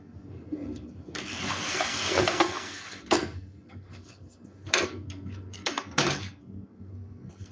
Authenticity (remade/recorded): remade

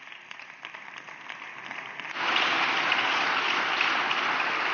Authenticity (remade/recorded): recorded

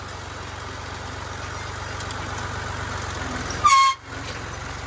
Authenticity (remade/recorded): recorded